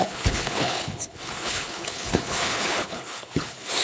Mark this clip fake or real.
fake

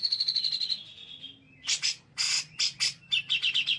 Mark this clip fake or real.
real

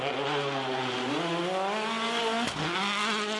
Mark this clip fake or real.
real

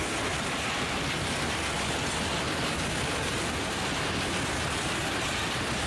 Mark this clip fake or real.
real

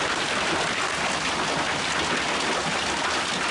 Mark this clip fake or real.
real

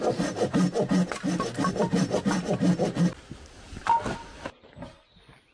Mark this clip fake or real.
real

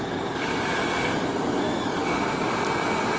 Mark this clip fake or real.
real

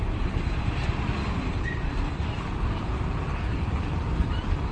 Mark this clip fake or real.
real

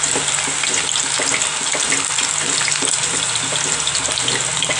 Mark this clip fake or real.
real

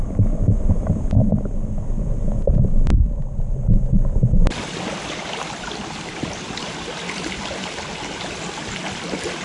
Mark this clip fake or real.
real